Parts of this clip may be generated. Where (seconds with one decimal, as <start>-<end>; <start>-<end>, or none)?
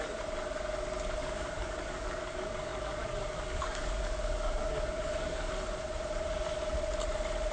1.2-5.5